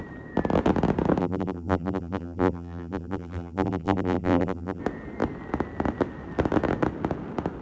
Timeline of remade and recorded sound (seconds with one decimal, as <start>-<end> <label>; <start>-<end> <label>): 0.0-1.2 recorded; 1.2-4.8 remade; 4.8-7.6 recorded